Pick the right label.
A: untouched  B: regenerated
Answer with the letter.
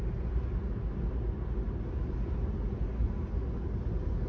A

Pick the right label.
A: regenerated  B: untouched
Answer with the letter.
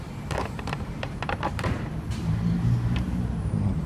A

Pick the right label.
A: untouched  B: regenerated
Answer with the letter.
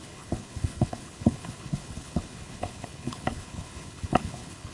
B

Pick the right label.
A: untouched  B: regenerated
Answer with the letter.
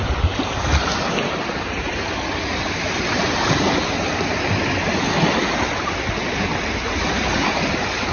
A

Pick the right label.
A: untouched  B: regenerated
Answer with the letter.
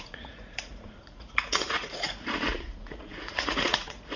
B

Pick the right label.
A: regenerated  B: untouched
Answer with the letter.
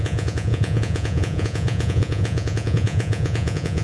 A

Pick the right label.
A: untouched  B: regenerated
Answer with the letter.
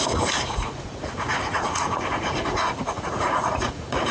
B